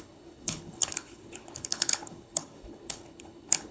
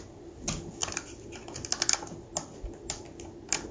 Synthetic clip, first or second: first